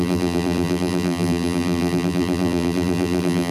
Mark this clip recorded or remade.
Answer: remade